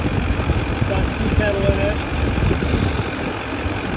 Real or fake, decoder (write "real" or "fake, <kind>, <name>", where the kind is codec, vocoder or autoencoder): real